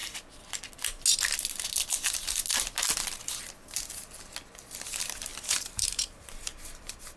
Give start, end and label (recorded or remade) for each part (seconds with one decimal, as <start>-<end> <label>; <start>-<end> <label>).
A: 0.0-5.3 recorded; 5.3-7.2 remade